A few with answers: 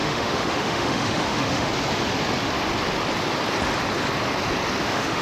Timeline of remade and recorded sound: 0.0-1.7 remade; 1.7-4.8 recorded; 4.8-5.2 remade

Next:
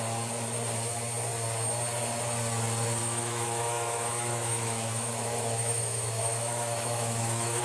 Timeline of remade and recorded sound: 0.0-3.0 recorded; 3.0-7.6 remade

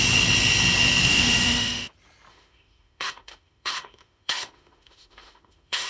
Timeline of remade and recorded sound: 0.0-1.0 recorded; 1.0-1.9 remade; 1.9-2.3 recorded; 2.3-5.9 remade

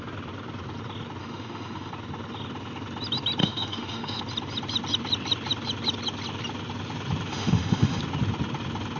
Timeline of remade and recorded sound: 0.0-1.2 recorded; 1.2-1.9 remade; 1.9-3.4 recorded; 3.4-4.2 remade; 4.2-7.3 recorded; 7.3-8.0 remade; 8.0-9.0 recorded

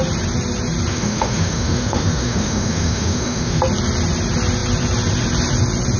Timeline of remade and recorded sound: 0.0-0.9 recorded; 0.9-3.6 remade; 3.6-6.0 recorded

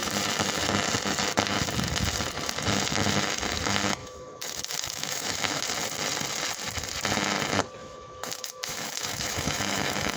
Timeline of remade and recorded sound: 0.0-4.0 recorded; 4.0-5.6 remade; 5.6-7.8 recorded; 7.8-10.2 remade

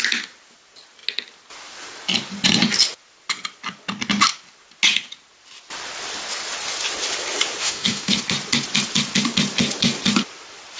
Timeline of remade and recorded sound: 0.0-7.6 recorded; 7.6-8.2 remade; 8.2-10.8 recorded